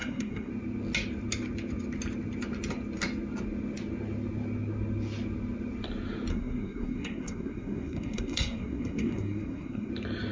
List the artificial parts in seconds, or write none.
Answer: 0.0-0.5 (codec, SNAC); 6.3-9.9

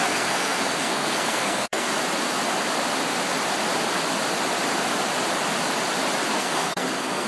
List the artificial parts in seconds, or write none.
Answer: 0.0-1.9 (codec, SNAC); 6.3-7.3

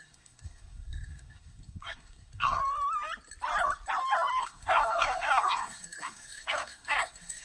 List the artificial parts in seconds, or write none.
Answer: 0.0-2.6 (codec, SNAC); 4.4-7.4

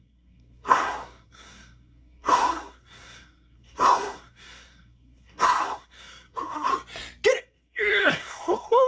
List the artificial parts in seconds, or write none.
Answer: 0.0-6.7 (codec, SNAC); 7.4-8.9

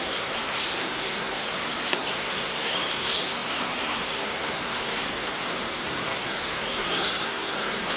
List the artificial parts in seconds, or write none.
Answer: 0.0-8.0 (codec, SNAC)

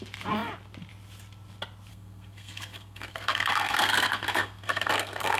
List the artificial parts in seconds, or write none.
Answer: 1.9-5.4 (codec, SNAC)

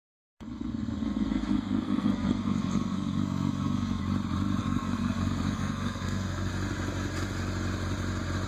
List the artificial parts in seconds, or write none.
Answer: 0.0-4.0 (codec, SNAC); 4.6-6.5

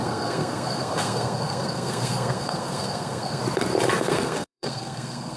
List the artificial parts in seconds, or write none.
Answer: 0.0-3.4 (codec, SNAC); 4.0-5.4